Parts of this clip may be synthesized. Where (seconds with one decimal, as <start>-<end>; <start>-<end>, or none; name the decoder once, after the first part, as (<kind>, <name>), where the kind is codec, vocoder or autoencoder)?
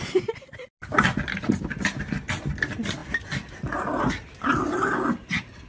none